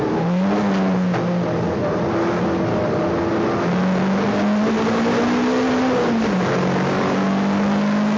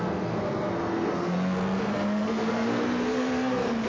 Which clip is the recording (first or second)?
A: first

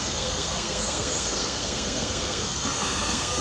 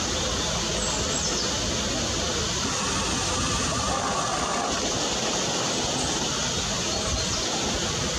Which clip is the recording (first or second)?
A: second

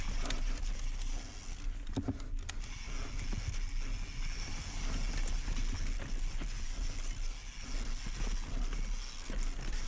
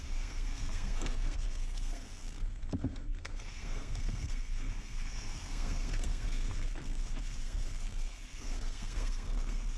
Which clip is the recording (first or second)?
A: first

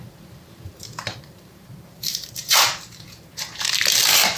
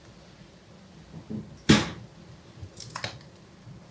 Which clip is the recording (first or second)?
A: second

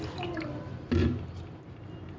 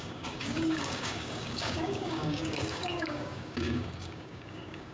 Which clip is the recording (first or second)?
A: first